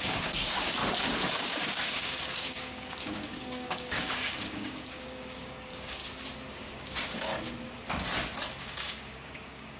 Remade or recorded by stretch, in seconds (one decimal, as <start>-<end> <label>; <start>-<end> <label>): 0.0-0.8 remade; 0.8-1.4 recorded; 1.4-6.0 remade; 6.0-6.6 recorded; 6.6-7.3 remade; 7.3-8.6 recorded; 8.6-9.8 remade